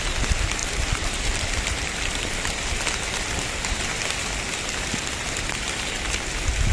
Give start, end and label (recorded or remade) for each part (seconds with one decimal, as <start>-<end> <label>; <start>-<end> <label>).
0.0-0.6 recorded; 0.6-3.2 remade; 3.2-6.7 recorded